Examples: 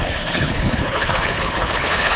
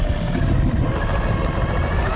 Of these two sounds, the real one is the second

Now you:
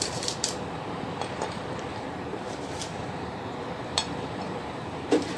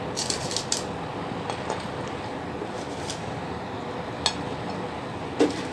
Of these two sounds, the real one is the second